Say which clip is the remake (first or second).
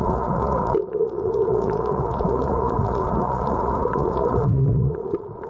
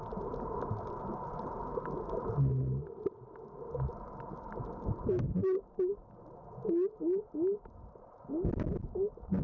first